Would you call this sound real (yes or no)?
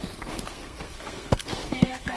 no